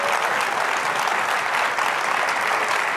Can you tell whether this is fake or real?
real